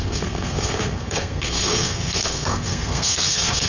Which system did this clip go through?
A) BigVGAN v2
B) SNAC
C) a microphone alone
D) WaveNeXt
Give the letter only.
B